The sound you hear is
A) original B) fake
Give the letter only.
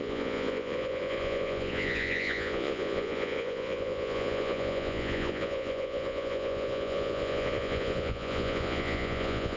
B